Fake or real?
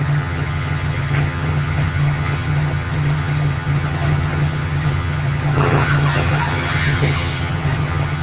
fake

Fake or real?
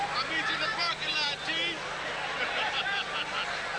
real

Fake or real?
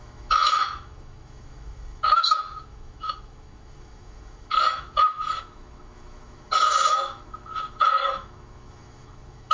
fake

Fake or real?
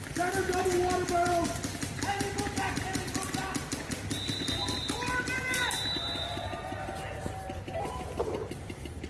real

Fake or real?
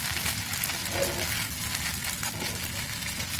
real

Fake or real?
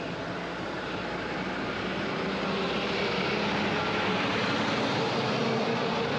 real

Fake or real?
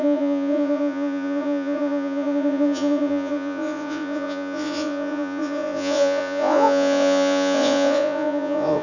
fake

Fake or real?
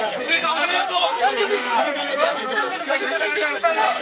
fake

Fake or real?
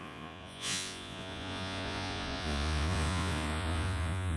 fake